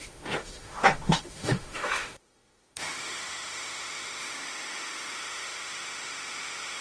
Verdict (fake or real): fake